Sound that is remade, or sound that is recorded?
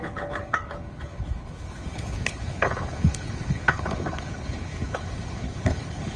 remade